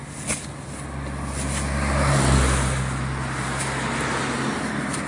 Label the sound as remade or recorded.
recorded